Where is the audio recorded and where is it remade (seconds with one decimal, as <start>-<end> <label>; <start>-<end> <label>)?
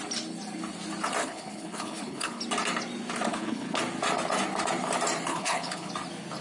0.0-1.2 recorded; 1.2-2.4 remade; 2.4-3.3 recorded; 3.3-3.8 remade; 3.8-5.3 recorded; 5.3-5.9 remade; 5.9-6.4 recorded